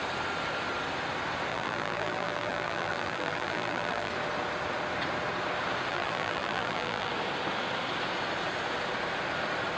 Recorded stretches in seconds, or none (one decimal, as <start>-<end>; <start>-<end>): 0.0-1.5; 4.1-5.9; 7.1-9.8